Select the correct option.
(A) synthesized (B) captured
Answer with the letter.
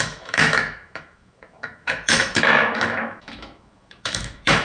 A